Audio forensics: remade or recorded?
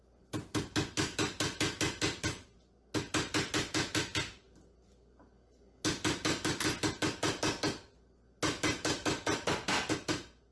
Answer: recorded